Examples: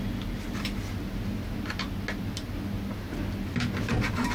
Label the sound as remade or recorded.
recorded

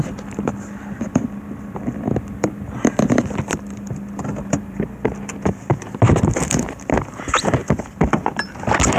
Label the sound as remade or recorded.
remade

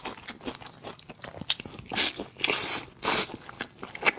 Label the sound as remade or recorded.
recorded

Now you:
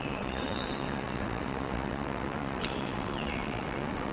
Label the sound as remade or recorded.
remade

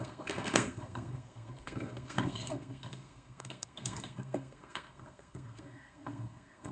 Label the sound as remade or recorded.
remade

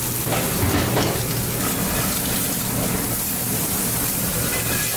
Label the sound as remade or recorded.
recorded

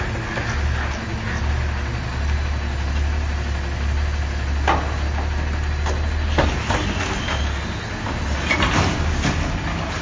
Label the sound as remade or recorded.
recorded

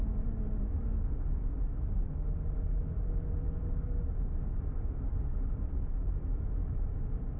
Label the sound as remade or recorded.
recorded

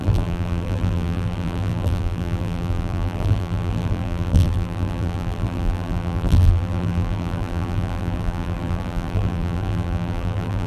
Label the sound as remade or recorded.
remade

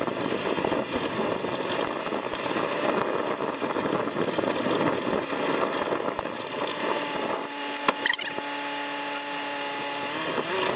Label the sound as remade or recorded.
recorded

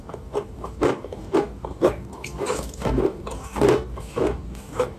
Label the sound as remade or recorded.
remade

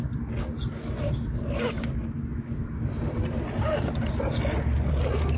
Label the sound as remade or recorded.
recorded